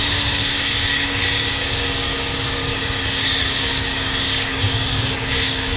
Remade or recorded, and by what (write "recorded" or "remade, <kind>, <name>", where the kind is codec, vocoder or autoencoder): remade, codec, DAC